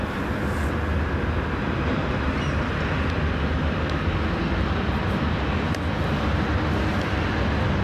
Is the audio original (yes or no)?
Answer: yes